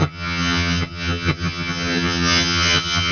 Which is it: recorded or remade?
remade